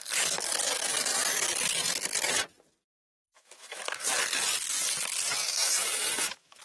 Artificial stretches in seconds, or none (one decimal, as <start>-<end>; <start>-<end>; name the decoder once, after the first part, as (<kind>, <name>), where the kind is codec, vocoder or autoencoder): 3.1-4.1 (autoencoder, DAC-VAE); 5.4-6.6